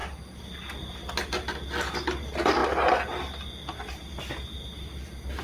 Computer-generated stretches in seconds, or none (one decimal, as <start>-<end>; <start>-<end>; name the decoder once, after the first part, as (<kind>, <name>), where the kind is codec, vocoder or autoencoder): none